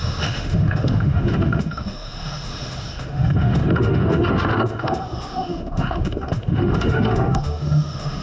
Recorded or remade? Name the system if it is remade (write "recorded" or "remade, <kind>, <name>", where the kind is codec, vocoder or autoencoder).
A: remade, autoencoder, DAC-VAE